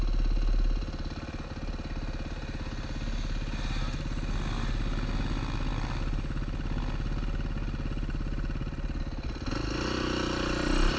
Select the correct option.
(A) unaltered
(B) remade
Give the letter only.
A